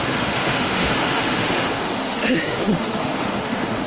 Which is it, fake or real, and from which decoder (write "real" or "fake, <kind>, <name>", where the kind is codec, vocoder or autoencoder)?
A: fake, autoencoder, DAC-VAE